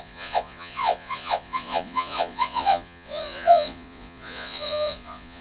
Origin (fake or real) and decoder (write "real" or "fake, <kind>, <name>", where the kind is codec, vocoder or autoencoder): fake, vocoder, Vocos